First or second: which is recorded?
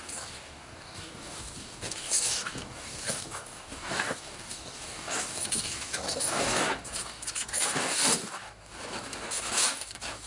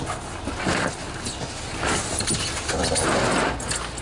second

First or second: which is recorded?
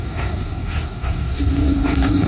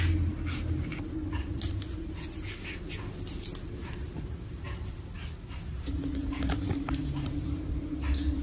second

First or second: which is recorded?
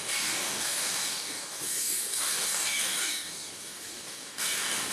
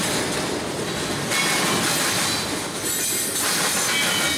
second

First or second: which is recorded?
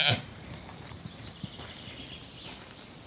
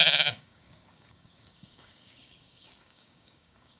first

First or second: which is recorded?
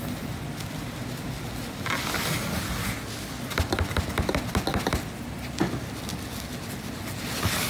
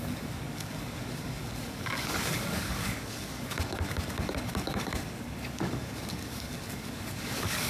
first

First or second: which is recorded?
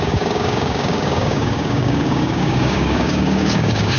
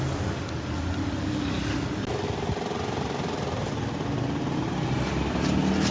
second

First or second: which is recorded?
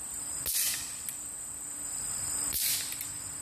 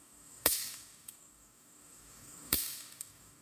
first